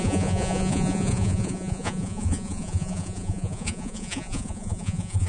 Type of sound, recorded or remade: remade